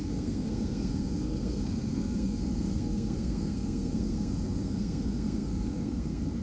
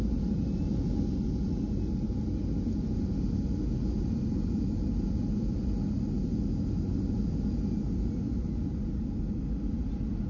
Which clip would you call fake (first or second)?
first